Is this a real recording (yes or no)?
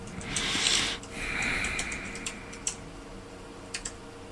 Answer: yes